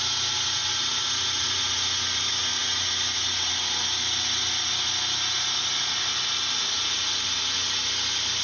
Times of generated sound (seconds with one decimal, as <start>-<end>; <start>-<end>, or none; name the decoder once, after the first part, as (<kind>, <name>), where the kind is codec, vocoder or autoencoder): none